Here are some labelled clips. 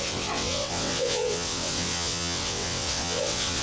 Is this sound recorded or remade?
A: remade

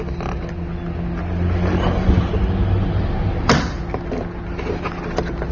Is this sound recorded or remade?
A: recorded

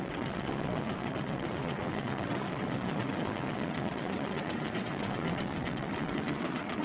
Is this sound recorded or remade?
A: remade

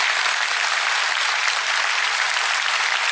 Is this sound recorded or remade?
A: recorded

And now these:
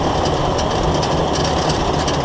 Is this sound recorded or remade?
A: recorded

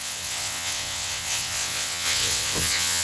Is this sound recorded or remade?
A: remade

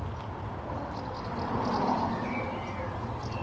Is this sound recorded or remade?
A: recorded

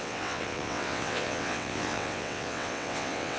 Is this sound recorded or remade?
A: remade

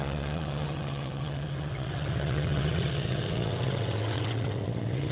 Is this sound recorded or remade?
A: remade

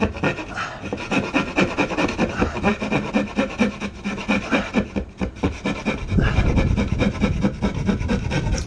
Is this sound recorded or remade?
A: recorded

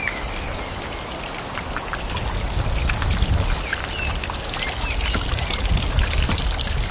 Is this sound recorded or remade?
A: recorded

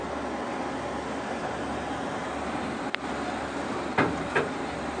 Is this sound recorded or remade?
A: recorded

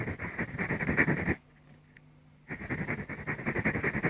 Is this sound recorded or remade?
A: recorded